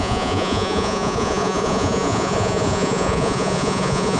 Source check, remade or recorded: remade